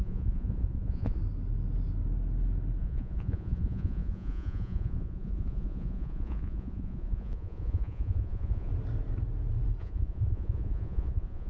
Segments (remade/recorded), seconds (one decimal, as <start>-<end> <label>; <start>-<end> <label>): 0.0-1.2 remade; 1.2-2.8 recorded; 2.8-8.7 remade; 8.7-9.8 recorded; 9.8-11.5 remade